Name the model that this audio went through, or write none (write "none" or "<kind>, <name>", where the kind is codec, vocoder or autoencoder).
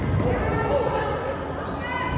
none